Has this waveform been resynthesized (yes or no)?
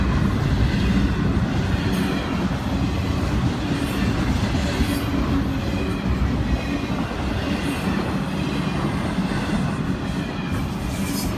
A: no